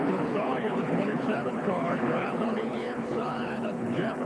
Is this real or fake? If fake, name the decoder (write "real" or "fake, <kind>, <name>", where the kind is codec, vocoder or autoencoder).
fake, codec, HILCodec